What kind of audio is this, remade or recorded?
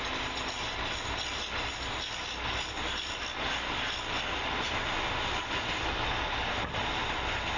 recorded